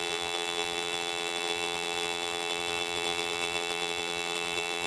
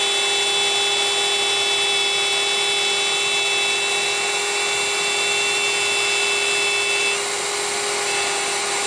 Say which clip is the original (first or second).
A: second